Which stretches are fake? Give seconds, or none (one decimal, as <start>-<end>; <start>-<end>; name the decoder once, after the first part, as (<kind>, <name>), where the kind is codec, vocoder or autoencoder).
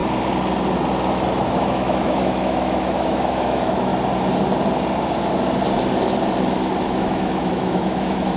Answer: 1.5-3.9 (autoencoder, DAC-VAE); 6.8-8.4